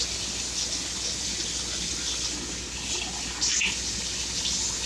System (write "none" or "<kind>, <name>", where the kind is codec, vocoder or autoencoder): none